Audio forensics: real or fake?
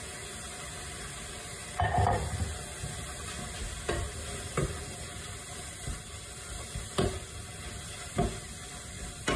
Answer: real